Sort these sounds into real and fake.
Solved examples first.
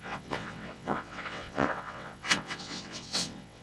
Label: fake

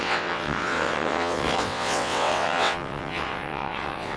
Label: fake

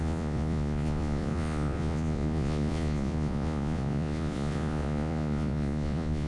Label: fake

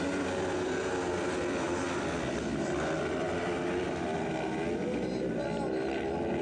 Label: real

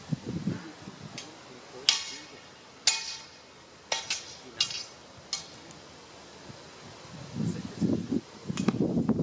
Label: real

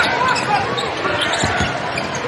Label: real